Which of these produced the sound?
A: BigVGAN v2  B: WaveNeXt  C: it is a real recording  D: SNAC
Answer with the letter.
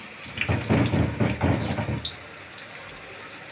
C